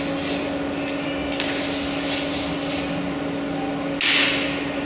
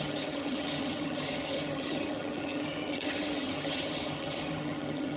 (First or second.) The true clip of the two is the first